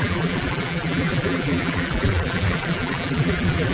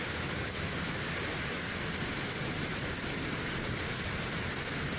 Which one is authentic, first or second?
second